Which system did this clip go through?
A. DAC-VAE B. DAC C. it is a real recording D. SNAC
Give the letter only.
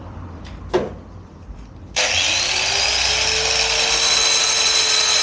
C